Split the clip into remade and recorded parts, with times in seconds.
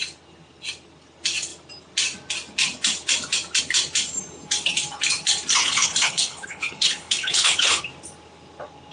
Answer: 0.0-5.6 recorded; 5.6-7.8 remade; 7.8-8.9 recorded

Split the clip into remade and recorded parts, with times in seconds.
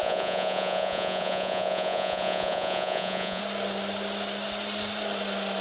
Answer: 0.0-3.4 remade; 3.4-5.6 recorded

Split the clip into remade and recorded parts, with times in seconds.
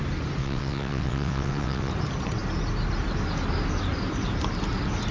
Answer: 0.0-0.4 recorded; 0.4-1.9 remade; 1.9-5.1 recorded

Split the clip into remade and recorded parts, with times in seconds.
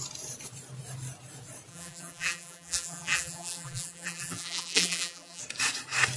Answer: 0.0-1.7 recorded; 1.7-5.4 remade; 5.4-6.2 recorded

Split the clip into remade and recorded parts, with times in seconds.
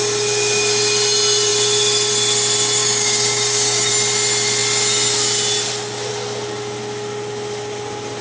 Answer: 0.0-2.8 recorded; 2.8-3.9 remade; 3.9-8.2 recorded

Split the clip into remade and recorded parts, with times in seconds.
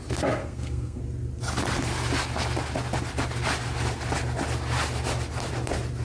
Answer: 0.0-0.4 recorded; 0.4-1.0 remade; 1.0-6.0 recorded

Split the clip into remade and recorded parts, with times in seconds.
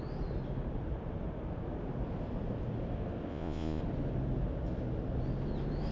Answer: 0.0-3.3 recorded; 3.3-3.8 remade; 3.8-5.9 recorded